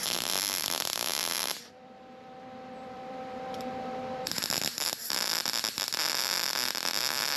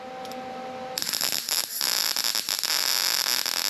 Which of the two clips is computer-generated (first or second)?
first